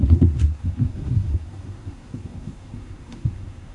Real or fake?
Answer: fake